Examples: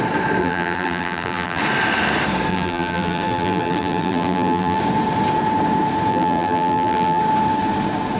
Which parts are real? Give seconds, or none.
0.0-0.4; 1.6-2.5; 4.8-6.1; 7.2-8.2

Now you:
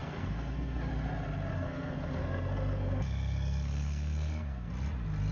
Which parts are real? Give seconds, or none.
0.9-1.5; 4.7-5.3

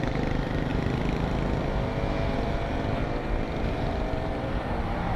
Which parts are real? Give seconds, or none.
0.7-3.6